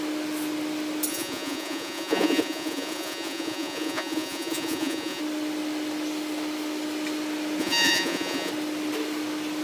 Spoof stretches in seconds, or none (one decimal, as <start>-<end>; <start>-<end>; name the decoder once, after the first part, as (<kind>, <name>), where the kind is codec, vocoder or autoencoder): 1.1-5.2 (vocoder, Vocos); 7.6-8.5